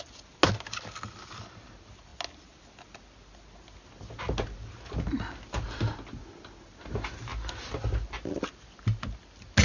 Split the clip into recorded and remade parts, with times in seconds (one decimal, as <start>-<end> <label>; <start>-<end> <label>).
0.0-9.6 recorded